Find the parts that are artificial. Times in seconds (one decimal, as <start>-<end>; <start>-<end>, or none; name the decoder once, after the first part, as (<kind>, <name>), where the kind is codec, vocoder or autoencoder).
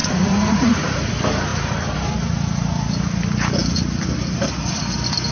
0.0-1.1 (vocoder, Vocos)